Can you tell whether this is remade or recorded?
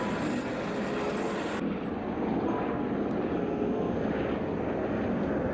recorded